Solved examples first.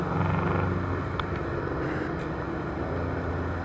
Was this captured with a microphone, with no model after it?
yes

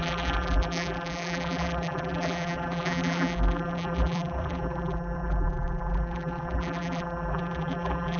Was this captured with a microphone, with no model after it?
no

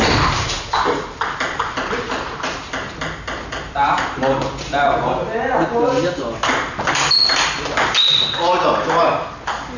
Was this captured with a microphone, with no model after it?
yes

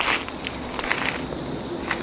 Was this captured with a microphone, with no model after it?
yes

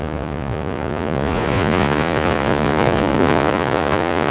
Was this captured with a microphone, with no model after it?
no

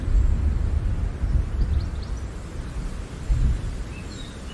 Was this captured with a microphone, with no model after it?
yes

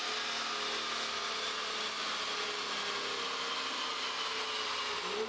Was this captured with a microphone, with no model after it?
yes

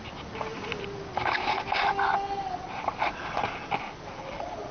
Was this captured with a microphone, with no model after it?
yes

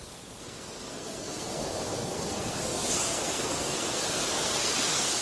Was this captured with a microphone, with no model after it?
no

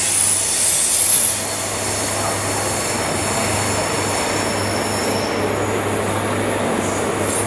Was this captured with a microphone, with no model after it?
yes